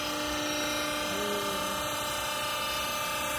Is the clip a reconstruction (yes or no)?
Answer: no